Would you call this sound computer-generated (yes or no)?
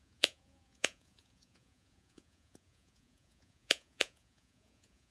yes